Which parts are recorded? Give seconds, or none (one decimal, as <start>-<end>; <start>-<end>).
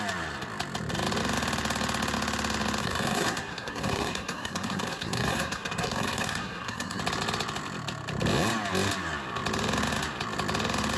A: 0.0-2.8; 7.0-11.0